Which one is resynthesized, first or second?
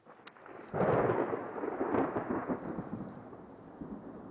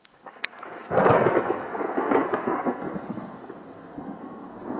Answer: second